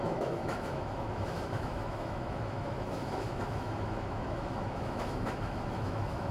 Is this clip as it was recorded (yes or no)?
no